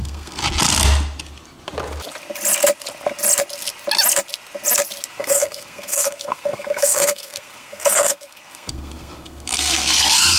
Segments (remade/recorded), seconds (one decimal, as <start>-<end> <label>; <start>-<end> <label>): 0.0-0.4 remade; 0.4-5.1 recorded; 5.1-10.4 remade